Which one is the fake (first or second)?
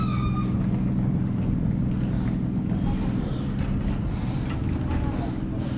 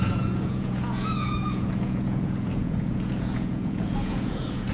second